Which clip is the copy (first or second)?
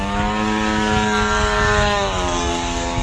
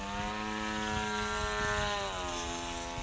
first